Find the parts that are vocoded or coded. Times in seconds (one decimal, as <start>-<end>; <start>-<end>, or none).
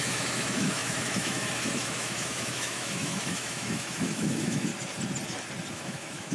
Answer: 0.0-4.7; 5.7-6.3